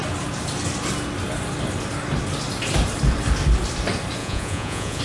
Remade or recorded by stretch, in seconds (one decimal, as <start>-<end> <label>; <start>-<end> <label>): 0.0-4.2 recorded; 4.2-5.0 remade